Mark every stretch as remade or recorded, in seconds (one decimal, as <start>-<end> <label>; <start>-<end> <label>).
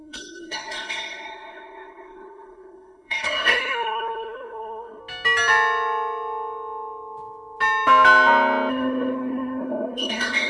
0.0-5.0 remade; 5.0-8.7 recorded; 8.7-10.5 remade